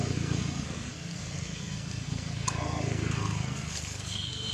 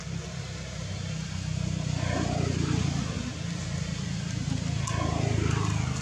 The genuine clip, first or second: second